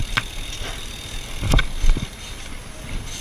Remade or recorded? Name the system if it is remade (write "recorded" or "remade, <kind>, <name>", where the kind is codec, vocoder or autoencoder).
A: recorded